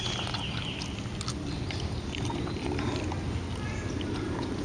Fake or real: real